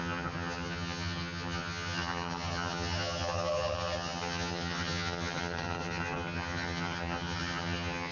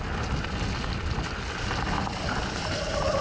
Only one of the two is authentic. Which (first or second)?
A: second